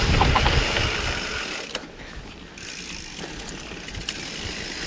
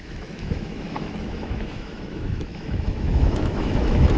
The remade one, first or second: second